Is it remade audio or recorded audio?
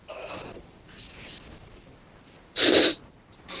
recorded